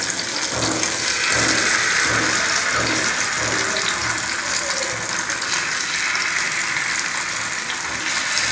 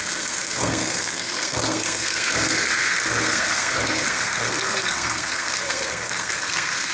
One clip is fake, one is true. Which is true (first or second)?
first